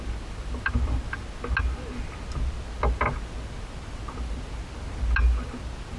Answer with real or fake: real